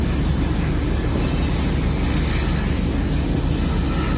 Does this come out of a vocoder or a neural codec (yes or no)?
no